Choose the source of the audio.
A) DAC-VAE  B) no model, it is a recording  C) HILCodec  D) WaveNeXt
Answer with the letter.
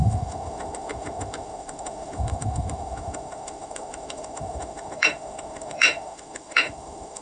A